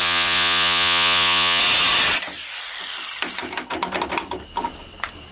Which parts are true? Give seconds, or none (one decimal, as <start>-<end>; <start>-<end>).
1.6-5.3